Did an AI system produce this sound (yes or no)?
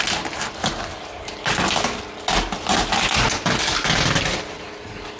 no